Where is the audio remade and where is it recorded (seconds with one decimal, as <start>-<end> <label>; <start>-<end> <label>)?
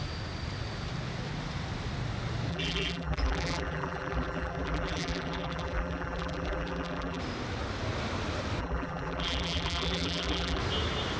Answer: 0.0-2.5 recorded; 2.5-7.2 remade; 7.2-8.6 recorded; 8.6-10.6 remade; 10.6-11.2 recorded